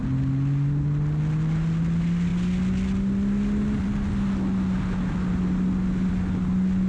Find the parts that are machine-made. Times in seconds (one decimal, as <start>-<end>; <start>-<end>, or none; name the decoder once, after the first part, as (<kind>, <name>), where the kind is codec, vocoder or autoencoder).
none